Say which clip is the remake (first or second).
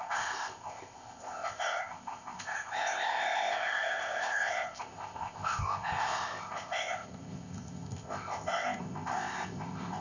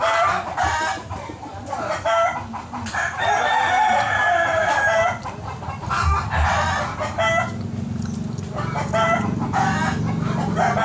first